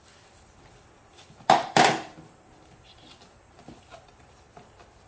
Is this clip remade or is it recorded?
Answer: remade